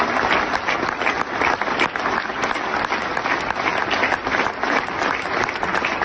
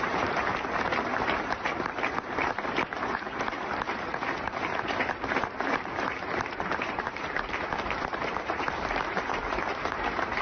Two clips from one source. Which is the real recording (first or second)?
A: first